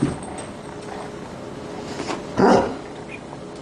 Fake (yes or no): no